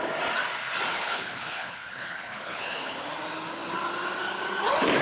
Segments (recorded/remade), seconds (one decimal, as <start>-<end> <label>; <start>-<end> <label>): 0.0-0.9 recorded; 0.9-3.0 remade; 3.0-5.0 recorded